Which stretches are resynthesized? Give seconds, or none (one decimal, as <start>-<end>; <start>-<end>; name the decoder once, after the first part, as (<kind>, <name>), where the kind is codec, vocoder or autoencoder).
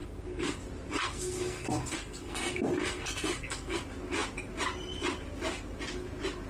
0.0-0.6 (codec, SNAC); 1.0-3.8